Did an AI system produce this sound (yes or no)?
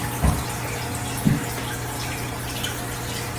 no